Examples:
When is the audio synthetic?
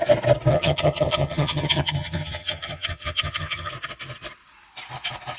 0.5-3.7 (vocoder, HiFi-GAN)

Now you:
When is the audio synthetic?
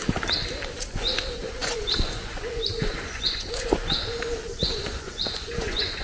0.9-6.0 (vocoder, Vocos)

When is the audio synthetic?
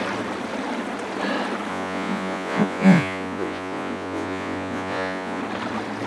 1.7-5.4 (vocoder, Vocos)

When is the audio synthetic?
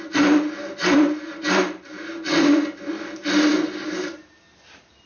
0.8-2.8 (vocoder, BigVGAN v2)